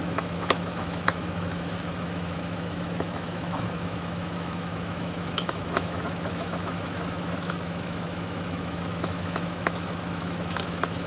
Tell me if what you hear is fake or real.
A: fake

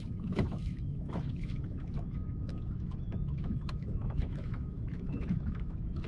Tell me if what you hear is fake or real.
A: fake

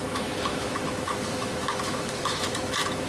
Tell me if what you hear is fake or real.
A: fake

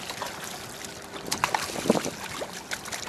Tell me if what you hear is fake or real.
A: real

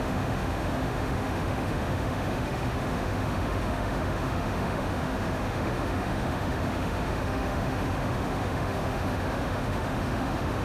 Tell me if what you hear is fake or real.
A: fake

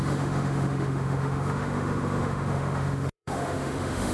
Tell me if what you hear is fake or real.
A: fake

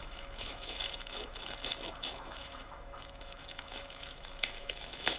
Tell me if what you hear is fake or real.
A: fake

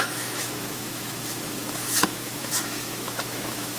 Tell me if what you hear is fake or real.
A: fake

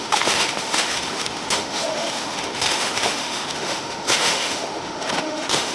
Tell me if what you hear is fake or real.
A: fake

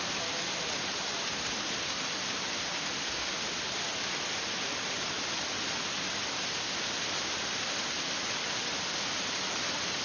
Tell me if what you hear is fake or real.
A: real